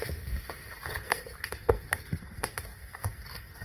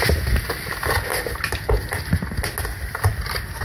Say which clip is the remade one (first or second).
first